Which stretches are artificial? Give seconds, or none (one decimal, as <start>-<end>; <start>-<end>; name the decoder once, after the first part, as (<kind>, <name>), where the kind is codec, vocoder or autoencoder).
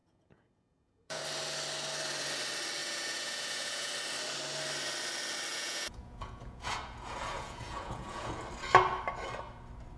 0.0-1.2 (vocoder, Vocos); 2.8-3.9; 5.5-8.4